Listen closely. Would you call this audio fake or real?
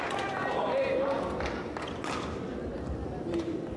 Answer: real